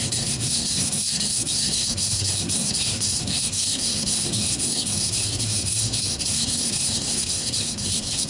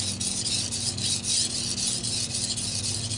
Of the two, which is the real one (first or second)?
second